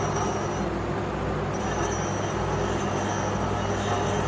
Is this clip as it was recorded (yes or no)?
yes